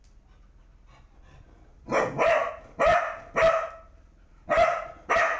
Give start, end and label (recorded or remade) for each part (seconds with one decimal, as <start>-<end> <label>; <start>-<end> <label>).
0.0-2.9 recorded; 2.9-3.7 remade; 3.7-5.4 recorded